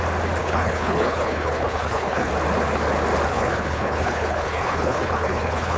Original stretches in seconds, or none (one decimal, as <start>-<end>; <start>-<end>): 0.0-0.4; 2.3-3.3